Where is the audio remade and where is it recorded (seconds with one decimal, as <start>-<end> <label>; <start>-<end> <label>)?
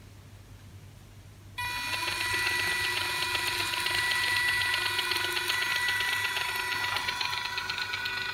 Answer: 0.0-8.3 recorded